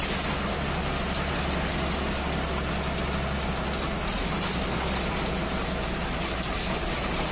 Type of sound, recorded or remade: recorded